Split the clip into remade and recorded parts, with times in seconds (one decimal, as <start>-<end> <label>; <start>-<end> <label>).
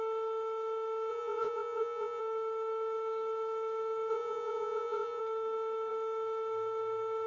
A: 0.0-1.1 recorded; 1.1-2.2 remade; 2.2-4.1 recorded; 4.1-5.2 remade; 5.2-7.3 recorded